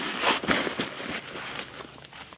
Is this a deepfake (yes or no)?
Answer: no